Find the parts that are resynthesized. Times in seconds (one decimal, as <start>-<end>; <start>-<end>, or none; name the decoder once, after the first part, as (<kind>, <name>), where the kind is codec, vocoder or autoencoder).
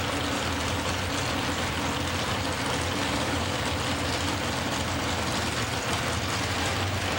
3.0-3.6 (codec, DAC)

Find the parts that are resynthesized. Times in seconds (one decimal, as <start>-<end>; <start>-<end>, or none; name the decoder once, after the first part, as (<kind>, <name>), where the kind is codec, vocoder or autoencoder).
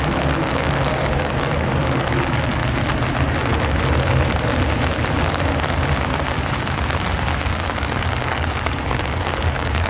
0.0-2.6 (codec, DAC); 7.4-9.9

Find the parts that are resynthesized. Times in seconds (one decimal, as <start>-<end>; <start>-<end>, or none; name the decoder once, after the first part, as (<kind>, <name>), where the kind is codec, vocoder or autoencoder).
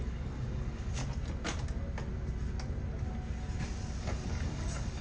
0.0-1.0 (codec, DAC); 4.0-5.0